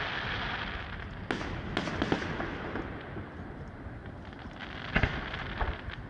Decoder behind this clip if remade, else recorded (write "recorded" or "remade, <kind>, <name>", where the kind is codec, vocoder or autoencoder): recorded